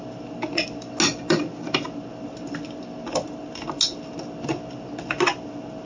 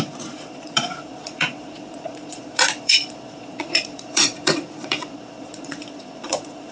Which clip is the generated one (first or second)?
second